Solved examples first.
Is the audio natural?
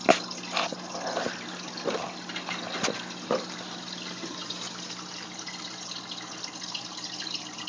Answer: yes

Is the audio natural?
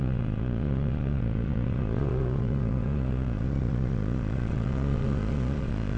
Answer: no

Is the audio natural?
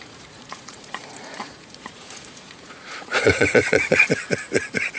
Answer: no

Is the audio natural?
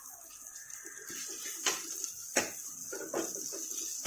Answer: yes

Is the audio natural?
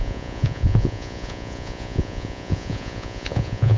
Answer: no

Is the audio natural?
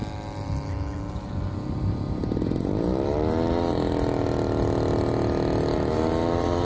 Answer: yes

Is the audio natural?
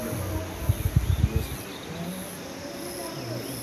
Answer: yes